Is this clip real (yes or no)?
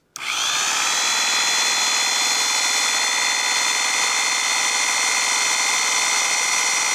yes